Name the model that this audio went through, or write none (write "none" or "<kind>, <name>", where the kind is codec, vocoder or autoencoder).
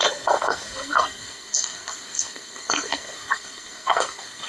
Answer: codec, SNAC